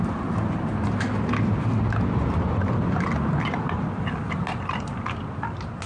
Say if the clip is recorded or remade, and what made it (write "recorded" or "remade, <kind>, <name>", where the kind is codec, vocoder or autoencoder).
recorded